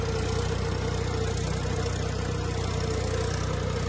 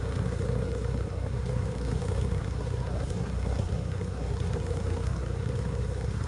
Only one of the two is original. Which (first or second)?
first